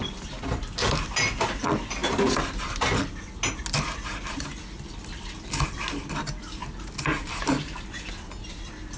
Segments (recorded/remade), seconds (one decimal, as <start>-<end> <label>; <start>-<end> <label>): 0.0-6.6 recorded; 6.6-8.1 remade; 8.1-9.0 recorded

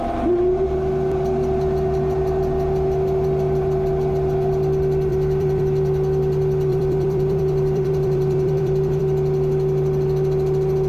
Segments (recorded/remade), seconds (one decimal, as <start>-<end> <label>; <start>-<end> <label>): 0.0-5.1 recorded; 5.1-5.6 remade; 5.6-6.7 recorded; 6.7-9.0 remade; 9.0-10.9 recorded

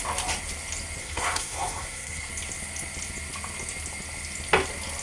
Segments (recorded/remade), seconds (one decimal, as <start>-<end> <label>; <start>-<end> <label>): 0.0-1.0 recorded; 1.0-2.3 remade; 2.3-5.0 recorded

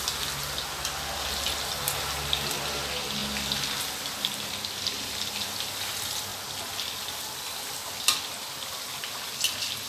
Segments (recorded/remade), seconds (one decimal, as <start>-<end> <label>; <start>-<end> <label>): 0.0-9.9 recorded

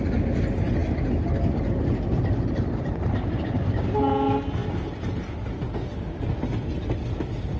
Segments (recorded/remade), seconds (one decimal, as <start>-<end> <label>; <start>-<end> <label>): 0.0-7.6 recorded

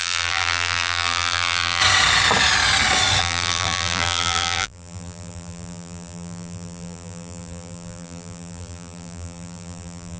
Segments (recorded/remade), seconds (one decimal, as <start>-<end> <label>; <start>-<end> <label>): 0.0-1.8 remade; 1.8-3.2 recorded; 3.2-10.2 remade

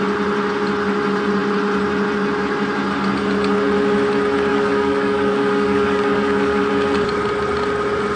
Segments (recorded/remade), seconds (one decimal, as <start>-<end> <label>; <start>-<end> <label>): 0.0-4.5 recorded; 4.5-6.7 remade; 6.7-8.2 recorded